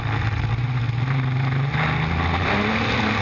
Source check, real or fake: real